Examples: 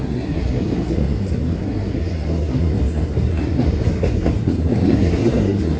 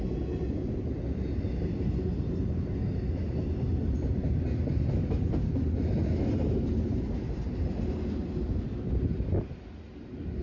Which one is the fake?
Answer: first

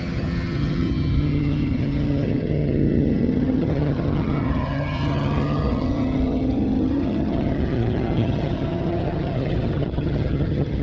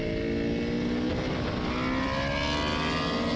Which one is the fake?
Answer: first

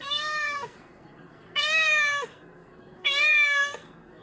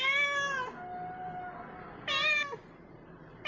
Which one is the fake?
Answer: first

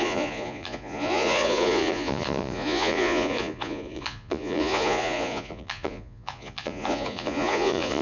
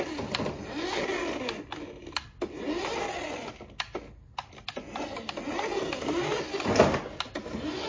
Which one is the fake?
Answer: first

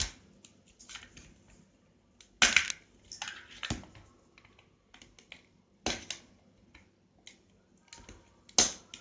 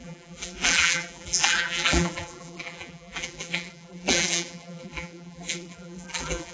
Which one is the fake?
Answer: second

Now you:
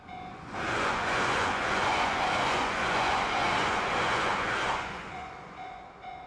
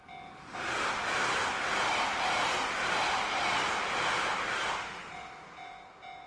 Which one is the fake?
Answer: first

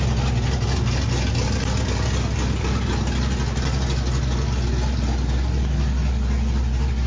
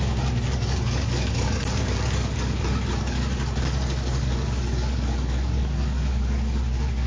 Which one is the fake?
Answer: second